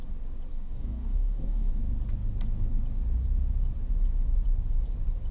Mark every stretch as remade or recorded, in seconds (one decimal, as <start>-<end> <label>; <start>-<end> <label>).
0.0-0.5 recorded; 0.5-1.7 remade; 1.7-5.3 recorded

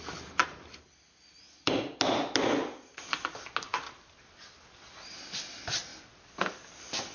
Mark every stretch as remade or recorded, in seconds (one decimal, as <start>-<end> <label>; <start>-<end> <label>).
0.0-7.1 recorded

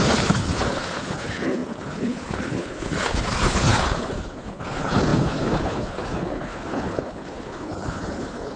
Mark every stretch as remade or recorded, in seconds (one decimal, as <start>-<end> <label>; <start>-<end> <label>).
0.0-8.6 remade

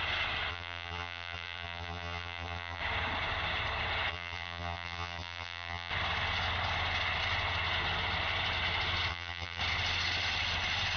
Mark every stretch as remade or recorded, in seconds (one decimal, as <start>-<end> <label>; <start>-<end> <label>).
0.0-0.5 recorded; 0.5-2.8 remade; 2.8-4.1 recorded; 4.1-5.9 remade; 5.9-9.1 recorded; 9.1-9.6 remade; 9.6-11.0 recorded